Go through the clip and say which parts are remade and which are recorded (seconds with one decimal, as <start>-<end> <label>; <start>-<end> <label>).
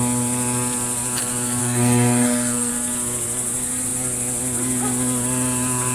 0.0-1.6 recorded; 1.6-2.7 remade; 2.7-5.9 recorded